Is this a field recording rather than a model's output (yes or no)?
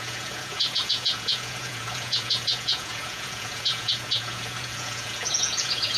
no